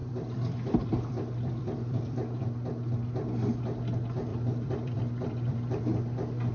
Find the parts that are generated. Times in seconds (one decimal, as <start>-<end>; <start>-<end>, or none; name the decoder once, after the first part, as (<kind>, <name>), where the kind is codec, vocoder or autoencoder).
0.0-2.4 (vocoder, BigVGAN v2); 4.3-5.8